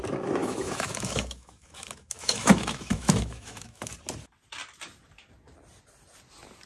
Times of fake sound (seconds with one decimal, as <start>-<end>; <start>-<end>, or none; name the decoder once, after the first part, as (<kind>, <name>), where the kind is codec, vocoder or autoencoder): 0.4-3.9 (autoencoder, DAC-VAE)